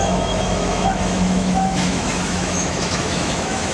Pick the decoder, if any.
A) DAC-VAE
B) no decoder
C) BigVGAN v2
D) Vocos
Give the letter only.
A